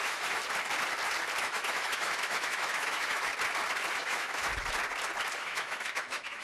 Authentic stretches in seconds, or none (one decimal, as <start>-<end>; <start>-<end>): 0.4-1.4; 3.3-3.9; 4.5-5.4